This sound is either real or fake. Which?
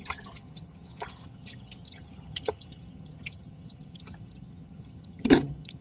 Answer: fake